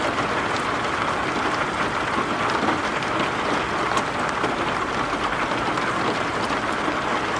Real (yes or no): yes